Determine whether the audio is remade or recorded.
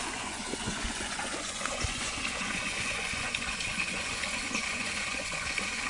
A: remade